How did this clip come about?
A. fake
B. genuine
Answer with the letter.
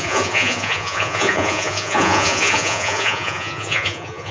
A